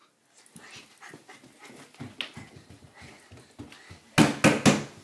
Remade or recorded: recorded